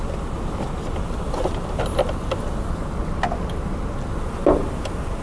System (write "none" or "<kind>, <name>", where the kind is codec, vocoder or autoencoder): none